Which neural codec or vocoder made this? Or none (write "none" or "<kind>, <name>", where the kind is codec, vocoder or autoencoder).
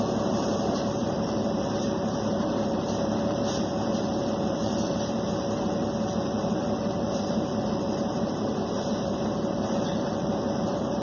vocoder, BigVGAN v2